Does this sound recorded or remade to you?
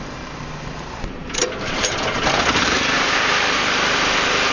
remade